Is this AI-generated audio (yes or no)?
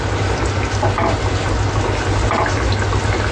no